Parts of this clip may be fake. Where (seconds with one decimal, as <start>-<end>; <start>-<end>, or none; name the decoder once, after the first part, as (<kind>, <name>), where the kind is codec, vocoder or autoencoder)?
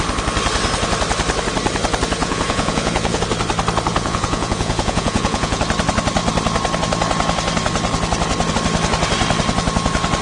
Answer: 2.2-3.2 (vocoder, Vocos); 3.9-5.6